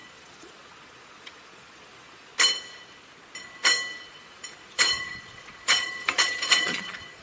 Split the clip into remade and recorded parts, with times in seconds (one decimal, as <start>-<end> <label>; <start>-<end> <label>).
0.0-2.3 remade; 2.3-4.1 recorded; 4.1-7.2 remade